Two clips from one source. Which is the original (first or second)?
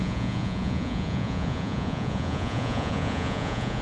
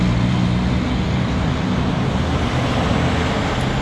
second